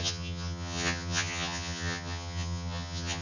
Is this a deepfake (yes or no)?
yes